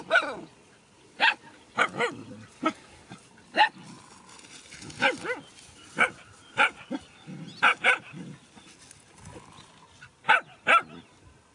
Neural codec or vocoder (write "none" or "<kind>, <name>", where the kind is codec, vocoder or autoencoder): none